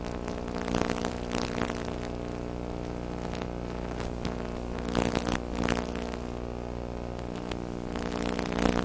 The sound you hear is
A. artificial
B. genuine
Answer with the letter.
B